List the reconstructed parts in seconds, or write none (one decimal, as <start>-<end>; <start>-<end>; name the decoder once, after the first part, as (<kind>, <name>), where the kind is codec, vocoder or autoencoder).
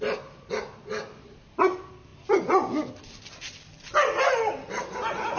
none